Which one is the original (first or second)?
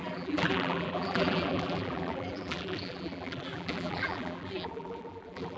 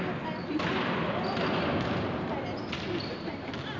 second